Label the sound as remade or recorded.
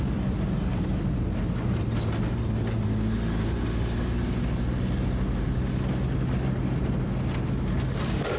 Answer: recorded